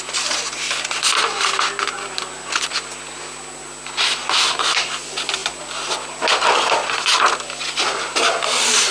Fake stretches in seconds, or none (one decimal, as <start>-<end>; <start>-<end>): none

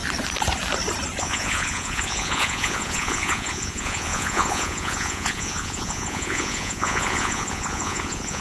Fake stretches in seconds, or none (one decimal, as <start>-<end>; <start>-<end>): 1.2-8.4